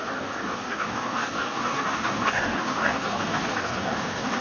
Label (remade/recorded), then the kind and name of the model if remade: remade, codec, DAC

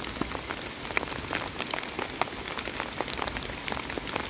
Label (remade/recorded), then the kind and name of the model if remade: recorded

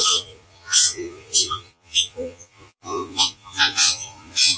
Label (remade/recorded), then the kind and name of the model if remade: remade, vocoder, Vocos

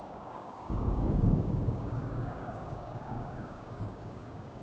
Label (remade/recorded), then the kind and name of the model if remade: remade, codec, DAC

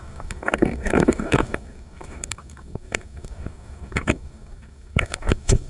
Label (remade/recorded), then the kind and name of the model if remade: remade, codec, DAC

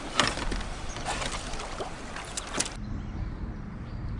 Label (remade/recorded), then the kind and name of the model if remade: recorded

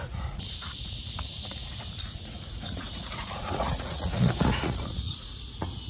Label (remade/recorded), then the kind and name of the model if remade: remade, vocoder, Vocos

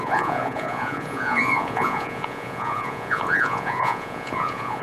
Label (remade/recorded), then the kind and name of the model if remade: remade, vocoder, Vocos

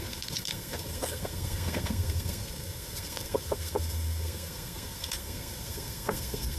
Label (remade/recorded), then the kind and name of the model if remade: remade, codec, SNAC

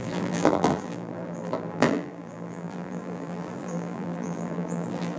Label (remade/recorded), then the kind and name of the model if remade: remade, vocoder, BigVGAN v2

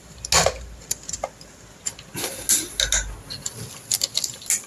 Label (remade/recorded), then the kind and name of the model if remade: recorded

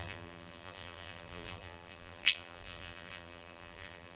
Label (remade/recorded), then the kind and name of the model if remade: remade, vocoder, BigVGAN v2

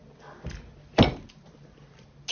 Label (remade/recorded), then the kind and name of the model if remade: recorded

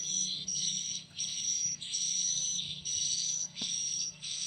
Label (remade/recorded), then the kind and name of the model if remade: remade, codec, SNAC